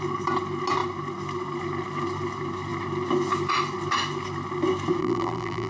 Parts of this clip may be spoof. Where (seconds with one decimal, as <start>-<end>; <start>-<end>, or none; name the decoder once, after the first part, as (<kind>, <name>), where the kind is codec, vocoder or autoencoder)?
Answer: 5.0-5.7 (vocoder, BigVGAN v2)